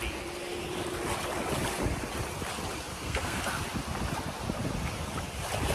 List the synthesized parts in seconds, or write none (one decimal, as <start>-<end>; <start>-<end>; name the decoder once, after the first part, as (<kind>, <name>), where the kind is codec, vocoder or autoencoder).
2.9-3.4 (codec, SNAC)